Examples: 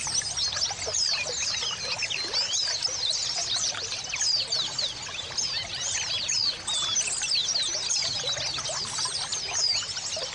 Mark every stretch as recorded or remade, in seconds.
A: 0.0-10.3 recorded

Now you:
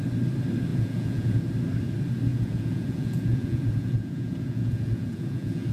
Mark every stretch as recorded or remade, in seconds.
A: 0.0-0.7 recorded; 0.7-1.5 remade; 1.5-2.3 recorded; 2.3-5.7 remade